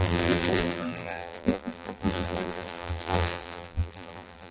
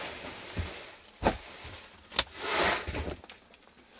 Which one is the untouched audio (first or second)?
second